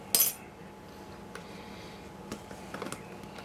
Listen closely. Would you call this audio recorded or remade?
recorded